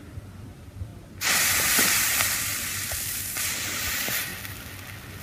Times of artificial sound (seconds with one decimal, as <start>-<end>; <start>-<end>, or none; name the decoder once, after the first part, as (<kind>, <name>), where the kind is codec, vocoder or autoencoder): 0.0-0.9 (vocoder, BigVGAN v2); 2.0-4.3

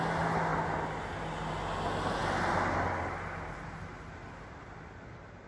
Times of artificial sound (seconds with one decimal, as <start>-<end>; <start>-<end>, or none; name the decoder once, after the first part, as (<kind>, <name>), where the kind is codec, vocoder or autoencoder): none

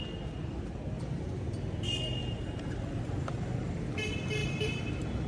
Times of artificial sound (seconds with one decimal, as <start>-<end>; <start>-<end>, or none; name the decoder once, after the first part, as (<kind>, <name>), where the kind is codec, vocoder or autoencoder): 2.2-3.8 (vocoder, BigVGAN v2); 4.4-5.3